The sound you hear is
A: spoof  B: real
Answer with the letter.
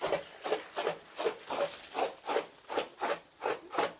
B